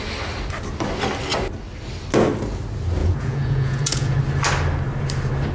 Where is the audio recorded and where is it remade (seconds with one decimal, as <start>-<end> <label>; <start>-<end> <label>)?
0.0-3.0 recorded; 3.0-4.2 remade; 4.2-5.5 recorded